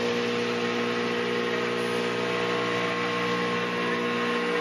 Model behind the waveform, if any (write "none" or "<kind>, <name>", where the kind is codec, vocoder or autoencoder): none